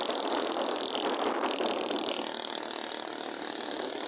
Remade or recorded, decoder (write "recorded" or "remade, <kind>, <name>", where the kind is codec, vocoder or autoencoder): recorded